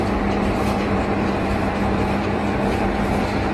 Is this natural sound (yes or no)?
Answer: no